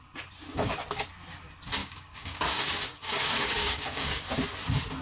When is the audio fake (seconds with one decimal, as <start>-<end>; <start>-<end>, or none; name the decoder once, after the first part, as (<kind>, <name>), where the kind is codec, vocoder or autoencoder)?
1.8-4.2 (codec, DAC)